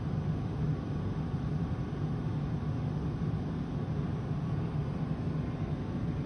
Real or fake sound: real